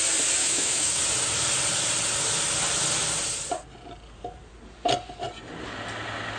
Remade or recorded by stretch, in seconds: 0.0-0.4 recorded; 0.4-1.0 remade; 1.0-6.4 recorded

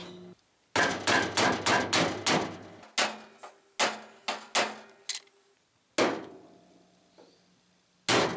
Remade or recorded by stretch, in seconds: 0.0-8.4 recorded

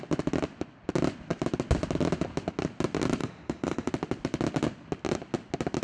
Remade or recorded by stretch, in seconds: 0.0-3.2 recorded; 3.2-3.9 remade; 3.9-5.8 recorded

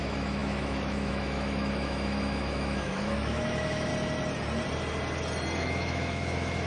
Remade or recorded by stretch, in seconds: 0.0-3.9 remade; 3.9-5.6 recorded; 5.6-6.7 remade